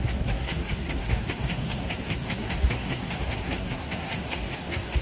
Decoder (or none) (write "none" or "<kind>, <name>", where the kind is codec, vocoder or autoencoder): codec, SNAC